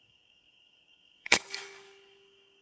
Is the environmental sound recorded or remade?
remade